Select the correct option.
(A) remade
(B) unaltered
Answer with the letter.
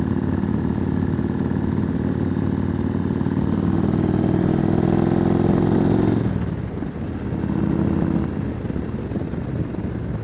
B